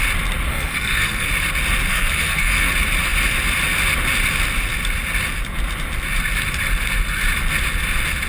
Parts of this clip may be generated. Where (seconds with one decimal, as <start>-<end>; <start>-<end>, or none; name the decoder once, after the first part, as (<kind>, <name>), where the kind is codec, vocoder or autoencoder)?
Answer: 0.5-1.3 (codec, SNAC); 1.9-2.7